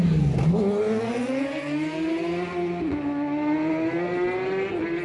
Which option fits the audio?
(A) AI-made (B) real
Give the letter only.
B